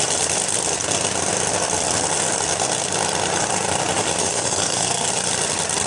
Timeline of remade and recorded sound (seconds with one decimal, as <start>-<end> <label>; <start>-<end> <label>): 0.0-4.2 recorded; 4.2-5.1 remade; 5.1-5.9 recorded